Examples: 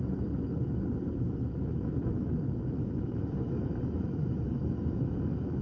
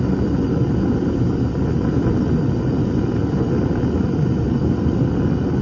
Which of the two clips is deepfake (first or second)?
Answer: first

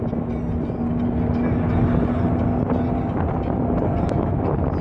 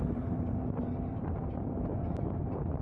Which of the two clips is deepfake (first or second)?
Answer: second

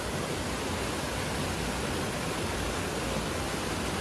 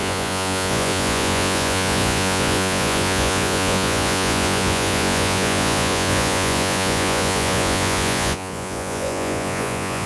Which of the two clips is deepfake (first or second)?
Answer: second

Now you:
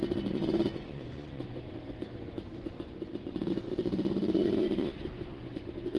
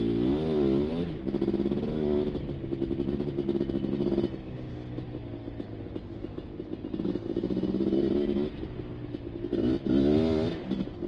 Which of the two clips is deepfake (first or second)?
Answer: first